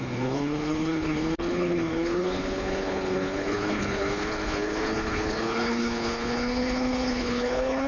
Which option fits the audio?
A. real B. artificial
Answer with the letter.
B